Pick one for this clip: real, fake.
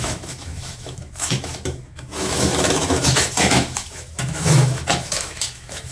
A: fake